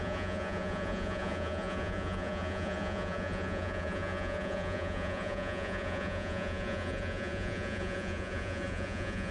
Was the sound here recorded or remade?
remade